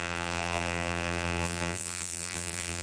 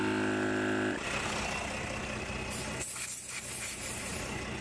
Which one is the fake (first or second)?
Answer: first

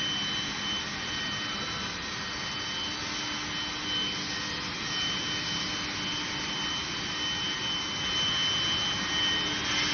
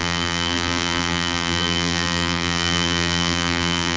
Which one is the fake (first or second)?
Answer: second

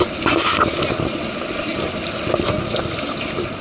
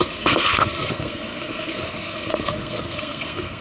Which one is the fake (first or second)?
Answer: second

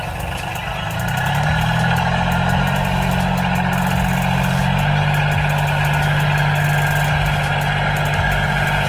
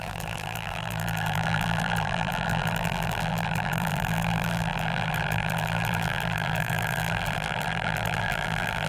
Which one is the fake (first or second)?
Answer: second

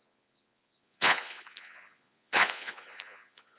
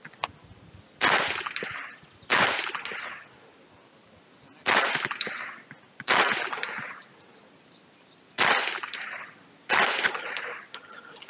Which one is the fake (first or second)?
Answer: first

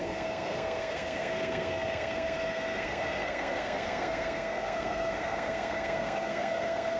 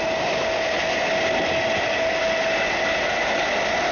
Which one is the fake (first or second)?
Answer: first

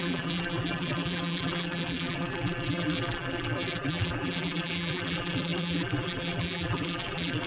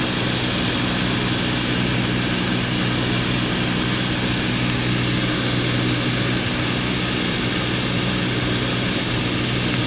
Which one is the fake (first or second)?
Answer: first